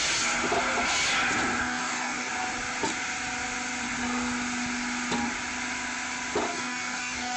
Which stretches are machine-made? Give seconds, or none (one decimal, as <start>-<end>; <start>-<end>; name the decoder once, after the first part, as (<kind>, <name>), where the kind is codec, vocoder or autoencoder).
1.6-2.3 (codec, DAC); 6.5-7.4